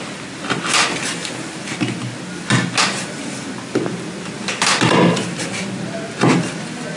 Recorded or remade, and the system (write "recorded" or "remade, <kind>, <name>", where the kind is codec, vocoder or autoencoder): recorded